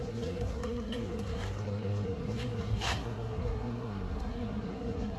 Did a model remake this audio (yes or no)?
yes